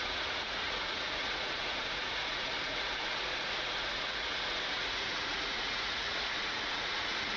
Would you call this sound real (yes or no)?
no